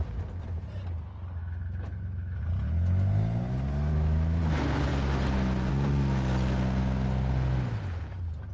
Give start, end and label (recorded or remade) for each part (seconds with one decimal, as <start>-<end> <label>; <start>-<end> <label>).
0.0-1.4 recorded; 1.4-2.4 remade; 2.4-3.9 recorded; 3.9-4.4 remade; 4.4-8.5 recorded